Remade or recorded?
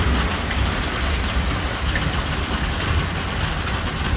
recorded